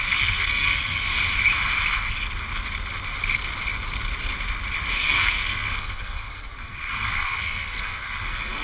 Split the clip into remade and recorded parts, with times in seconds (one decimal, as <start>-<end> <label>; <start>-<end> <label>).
0.0-1.1 remade; 1.1-4.9 recorded; 4.9-8.6 remade